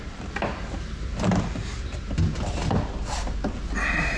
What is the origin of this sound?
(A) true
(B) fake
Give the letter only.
A